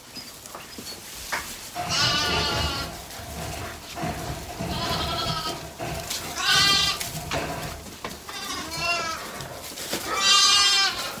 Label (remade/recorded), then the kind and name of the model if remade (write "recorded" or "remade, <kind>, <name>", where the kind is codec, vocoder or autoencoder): recorded